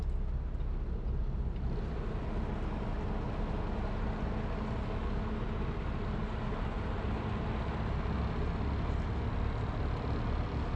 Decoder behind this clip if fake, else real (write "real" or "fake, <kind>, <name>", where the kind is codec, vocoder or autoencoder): real